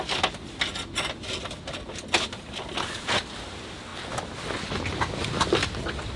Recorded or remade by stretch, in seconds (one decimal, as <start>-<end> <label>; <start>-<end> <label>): 0.0-6.2 recorded